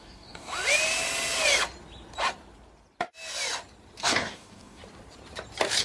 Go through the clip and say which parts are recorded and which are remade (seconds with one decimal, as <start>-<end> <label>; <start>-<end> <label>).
0.0-0.5 remade; 0.5-4.0 recorded; 4.0-4.8 remade; 4.8-5.8 recorded